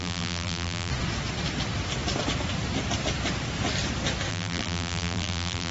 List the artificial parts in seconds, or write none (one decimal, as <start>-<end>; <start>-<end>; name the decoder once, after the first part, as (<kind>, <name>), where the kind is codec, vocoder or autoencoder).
0.0-0.9 (vocoder, BigVGAN v2); 4.3-5.7